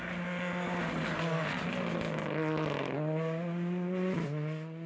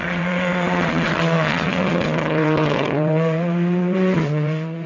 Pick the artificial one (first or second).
second